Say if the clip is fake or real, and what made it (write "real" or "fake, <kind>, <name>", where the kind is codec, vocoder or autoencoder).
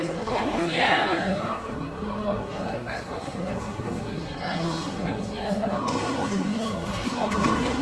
fake, codec, SNAC